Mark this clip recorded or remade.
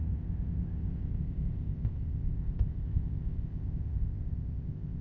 remade